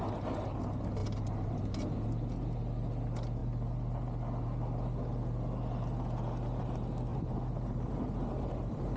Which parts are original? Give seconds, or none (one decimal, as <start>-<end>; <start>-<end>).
0.0-1.0; 1.6-7.1